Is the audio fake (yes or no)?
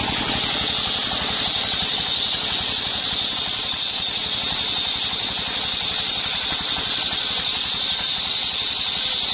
no